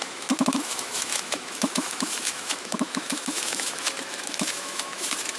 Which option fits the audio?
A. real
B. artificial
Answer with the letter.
B